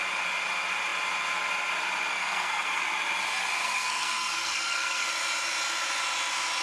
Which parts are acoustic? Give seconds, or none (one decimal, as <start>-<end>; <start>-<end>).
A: 0.0-2.1; 2.8-3.6; 5.1-6.6